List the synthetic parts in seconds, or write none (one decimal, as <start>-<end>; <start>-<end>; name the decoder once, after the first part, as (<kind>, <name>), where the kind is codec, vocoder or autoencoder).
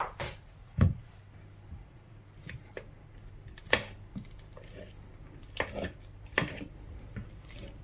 0.6-1.1 (vocoder, Vocos); 1.7-2.2